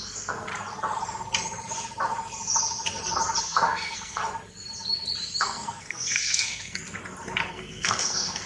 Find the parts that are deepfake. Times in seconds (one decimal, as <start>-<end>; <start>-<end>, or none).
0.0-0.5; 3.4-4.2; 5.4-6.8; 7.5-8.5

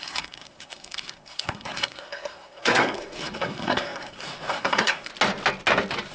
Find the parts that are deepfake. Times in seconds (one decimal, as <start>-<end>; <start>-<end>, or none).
0.0-5.1

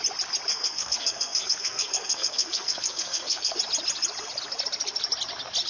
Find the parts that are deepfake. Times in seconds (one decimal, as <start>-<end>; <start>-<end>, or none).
0.5-3.6

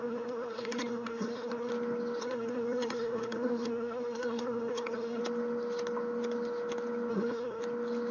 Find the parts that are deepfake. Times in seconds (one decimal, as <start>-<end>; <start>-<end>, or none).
0.0-1.7; 2.2-5.2; 7.1-7.6